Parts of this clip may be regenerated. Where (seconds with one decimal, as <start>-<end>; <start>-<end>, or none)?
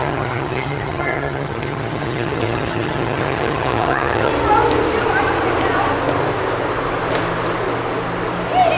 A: 0.0-4.3